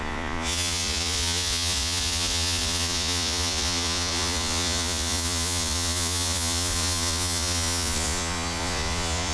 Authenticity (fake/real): fake